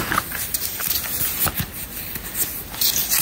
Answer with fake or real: real